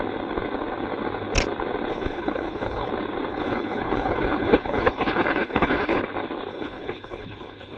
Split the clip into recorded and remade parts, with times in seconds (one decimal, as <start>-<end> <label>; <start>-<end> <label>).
0.0-1.9 recorded; 1.9-2.9 remade; 2.9-3.3 recorded; 3.3-6.0 remade; 6.0-6.5 recorded; 6.5-7.8 remade